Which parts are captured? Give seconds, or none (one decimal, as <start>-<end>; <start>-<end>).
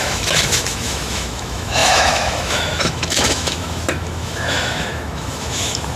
none